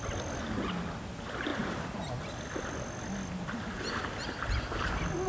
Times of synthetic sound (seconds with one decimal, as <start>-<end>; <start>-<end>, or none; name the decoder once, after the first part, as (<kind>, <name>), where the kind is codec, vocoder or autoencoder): none